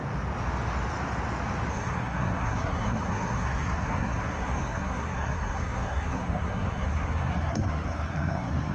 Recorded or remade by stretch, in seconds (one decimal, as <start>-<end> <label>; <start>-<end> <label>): 0.0-1.7 recorded; 1.7-8.7 remade